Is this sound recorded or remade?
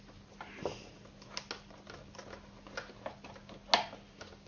recorded